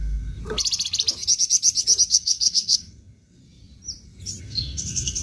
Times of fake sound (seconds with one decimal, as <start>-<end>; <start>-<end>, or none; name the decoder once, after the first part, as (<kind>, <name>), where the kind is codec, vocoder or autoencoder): 0.0-0.4 (codec, SNAC); 2.1-3.4; 4.4-5.2